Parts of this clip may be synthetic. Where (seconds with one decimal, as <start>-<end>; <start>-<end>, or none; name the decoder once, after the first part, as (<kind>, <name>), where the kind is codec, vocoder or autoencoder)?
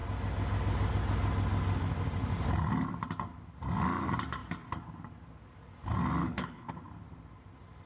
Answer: 6.2-6.7 (codec, HILCodec)